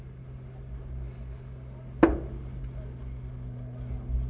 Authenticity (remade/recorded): recorded